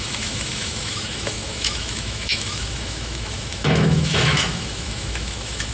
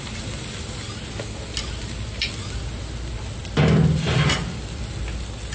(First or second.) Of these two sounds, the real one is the second